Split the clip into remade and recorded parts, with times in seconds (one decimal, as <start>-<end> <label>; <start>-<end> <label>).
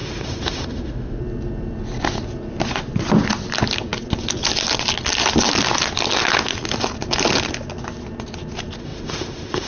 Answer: 0.0-1.2 remade; 1.2-8.8 recorded; 8.8-9.7 remade